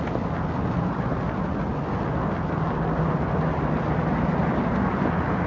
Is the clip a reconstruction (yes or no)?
no